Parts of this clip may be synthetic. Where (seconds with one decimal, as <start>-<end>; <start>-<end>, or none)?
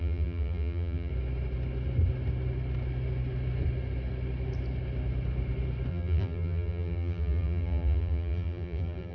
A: 0.0-1.1; 5.9-9.1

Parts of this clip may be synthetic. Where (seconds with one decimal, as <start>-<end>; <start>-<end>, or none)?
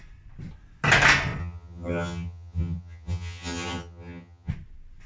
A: 1.4-4.5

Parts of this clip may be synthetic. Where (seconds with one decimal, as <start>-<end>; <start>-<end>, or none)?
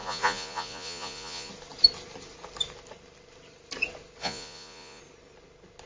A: 0.0-1.5; 4.2-5.0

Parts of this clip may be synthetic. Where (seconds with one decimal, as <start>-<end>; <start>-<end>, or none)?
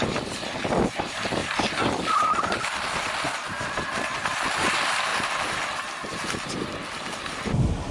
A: 1.4-2.4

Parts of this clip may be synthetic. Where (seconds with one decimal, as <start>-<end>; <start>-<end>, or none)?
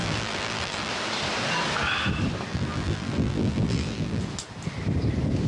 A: 0.0-0.9; 2.5-4.2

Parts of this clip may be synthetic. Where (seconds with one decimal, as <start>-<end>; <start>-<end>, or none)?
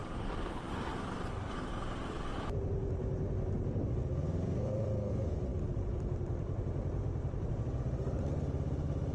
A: 0.0-5.1; 5.5-6.6; 7.0-7.8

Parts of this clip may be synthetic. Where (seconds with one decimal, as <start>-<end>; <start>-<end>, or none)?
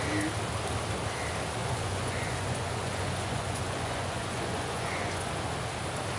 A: 1.6-5.3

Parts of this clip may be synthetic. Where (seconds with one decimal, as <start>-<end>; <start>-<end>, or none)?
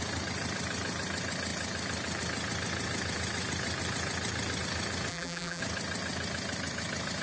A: 5.1-5.6